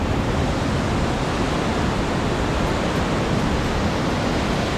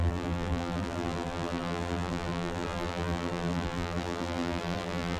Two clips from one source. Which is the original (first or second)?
first